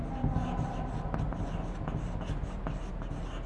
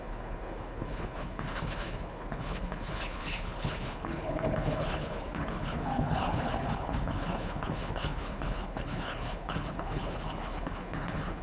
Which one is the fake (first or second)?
second